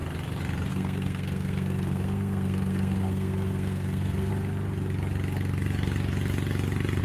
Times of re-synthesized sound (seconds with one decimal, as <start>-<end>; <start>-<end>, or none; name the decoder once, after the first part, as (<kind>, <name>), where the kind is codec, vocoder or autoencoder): 0.7-4.3 (codec, SNAC)